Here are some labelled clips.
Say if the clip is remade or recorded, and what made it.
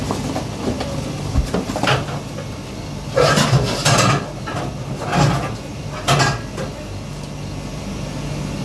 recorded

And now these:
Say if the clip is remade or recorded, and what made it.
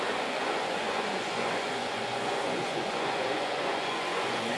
remade, vocoder, Vocos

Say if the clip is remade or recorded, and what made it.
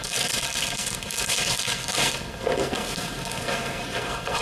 remade, codec, SNAC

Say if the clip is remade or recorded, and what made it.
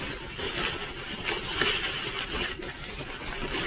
recorded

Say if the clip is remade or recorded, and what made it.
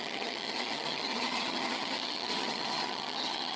remade, vocoder, HiFi-GAN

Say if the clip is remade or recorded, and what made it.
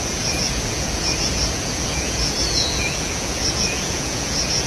remade, vocoder, Vocos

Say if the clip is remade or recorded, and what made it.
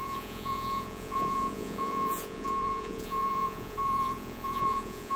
remade, vocoder, Vocos